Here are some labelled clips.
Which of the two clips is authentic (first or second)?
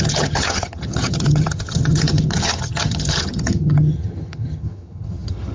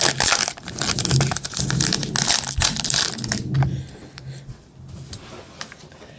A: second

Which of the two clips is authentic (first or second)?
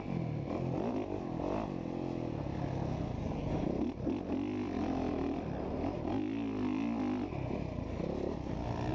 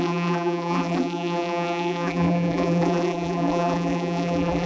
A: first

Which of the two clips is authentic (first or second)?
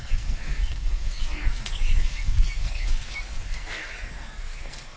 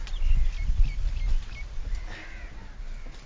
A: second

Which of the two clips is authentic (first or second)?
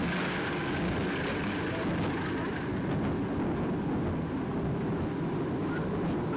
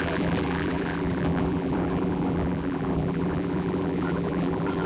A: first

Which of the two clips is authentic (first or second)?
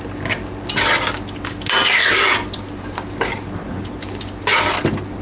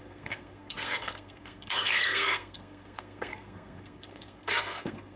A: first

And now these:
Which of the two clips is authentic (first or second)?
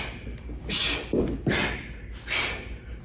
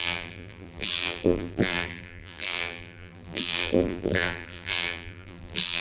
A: first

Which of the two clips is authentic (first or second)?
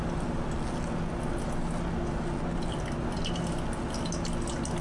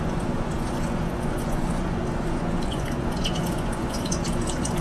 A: first